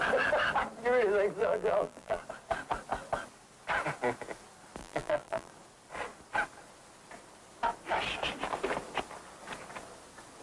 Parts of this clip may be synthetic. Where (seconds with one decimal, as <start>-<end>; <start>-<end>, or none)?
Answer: 1.4-2.2; 4.8-5.5